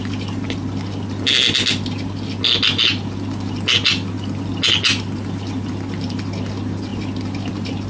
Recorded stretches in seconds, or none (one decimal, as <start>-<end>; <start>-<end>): 0.0-7.9